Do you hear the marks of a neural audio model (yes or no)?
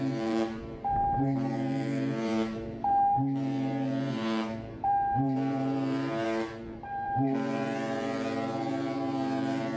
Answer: yes